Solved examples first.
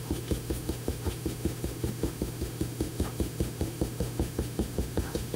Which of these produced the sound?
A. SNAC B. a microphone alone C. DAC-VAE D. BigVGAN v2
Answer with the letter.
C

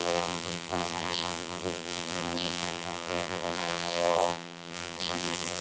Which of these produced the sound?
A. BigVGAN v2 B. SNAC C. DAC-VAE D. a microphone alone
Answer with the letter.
A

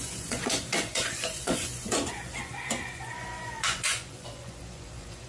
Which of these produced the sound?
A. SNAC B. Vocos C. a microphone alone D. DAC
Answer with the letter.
B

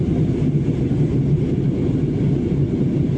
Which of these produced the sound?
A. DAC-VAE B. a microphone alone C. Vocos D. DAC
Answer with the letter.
B